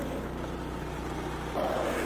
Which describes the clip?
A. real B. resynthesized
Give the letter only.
A